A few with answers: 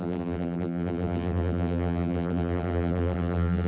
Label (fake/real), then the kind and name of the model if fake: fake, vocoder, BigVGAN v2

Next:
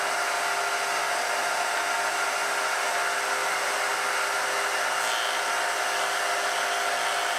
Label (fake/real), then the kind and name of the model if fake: real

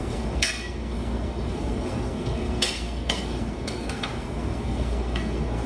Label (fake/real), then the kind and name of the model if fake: fake, codec, SNAC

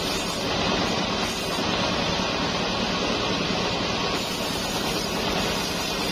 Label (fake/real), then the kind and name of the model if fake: real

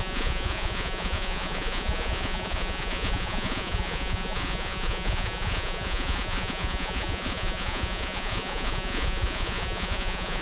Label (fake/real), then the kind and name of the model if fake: fake, vocoder, Vocos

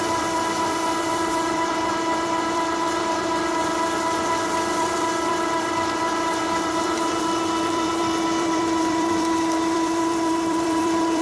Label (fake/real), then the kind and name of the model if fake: fake, vocoder, BigVGAN v2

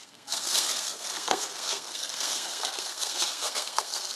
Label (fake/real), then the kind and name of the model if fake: fake, codec, SNAC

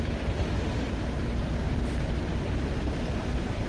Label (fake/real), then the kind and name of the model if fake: fake, vocoder, BigVGAN v2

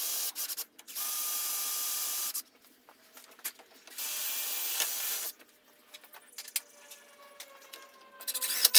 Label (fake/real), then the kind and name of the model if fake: real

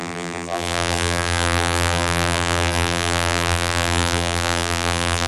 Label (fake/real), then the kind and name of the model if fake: fake, vocoder, BigVGAN v2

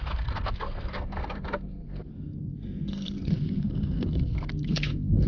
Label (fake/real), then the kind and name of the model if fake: fake, codec, SNAC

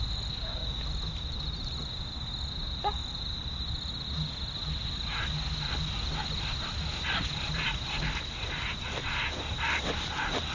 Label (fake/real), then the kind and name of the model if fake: real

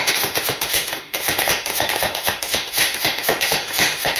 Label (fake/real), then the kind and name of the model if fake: fake, autoencoder, DAC-VAE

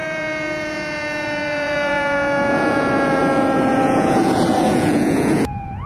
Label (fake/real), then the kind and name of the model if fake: fake, vocoder, Vocos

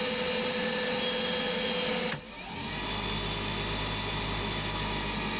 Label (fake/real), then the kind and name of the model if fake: real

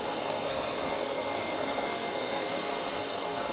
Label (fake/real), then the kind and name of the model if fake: fake, codec, SNAC